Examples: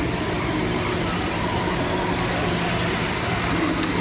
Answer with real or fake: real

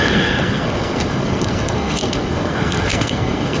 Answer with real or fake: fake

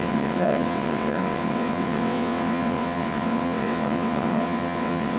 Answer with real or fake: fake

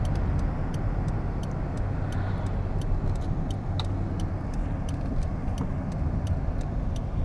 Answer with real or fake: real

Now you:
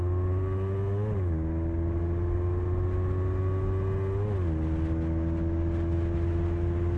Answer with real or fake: real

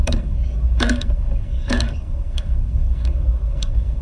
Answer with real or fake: fake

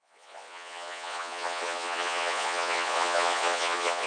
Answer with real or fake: fake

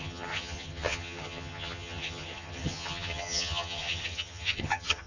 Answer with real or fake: fake